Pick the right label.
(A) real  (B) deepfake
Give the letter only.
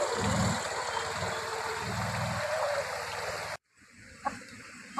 A